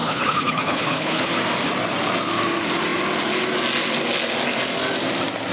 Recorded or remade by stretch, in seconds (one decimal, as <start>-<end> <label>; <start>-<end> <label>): 0.0-1.3 remade; 1.3-5.5 recorded